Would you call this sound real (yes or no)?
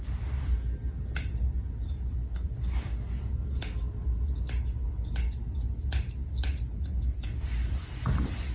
yes